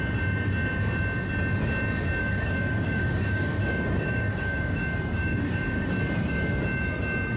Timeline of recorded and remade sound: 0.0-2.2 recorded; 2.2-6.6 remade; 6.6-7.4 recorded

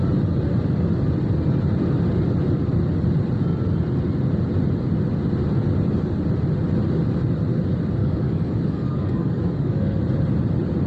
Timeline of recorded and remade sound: 0.0-8.0 recorded; 8.0-10.0 remade; 10.0-10.9 recorded

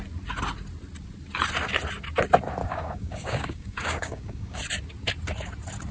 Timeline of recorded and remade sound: 0.0-2.6 recorded; 2.6-4.6 remade; 4.6-5.9 recorded

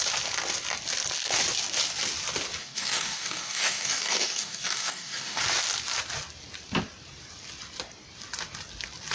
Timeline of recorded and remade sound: 0.0-2.6 recorded; 2.6-5.4 remade; 5.4-9.1 recorded

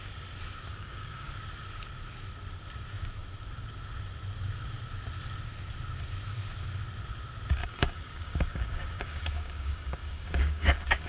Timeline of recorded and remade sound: 0.0-0.7 recorded; 0.7-1.3 remade; 1.3-7.6 recorded; 7.6-11.1 remade